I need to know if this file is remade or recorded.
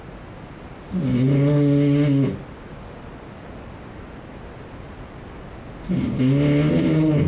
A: recorded